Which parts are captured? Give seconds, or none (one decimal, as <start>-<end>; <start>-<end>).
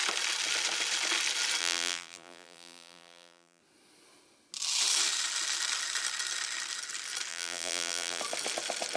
0.0-1.6; 3.6-7.3; 8.2-9.0